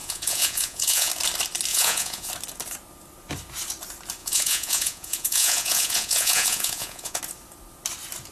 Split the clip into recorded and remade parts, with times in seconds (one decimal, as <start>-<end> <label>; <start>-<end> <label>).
0.0-1.1 remade; 1.1-1.7 recorded; 1.7-2.3 remade; 2.3-4.2 recorded; 4.2-7.2 remade; 7.2-8.3 recorded